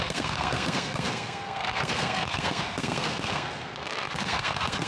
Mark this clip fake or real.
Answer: fake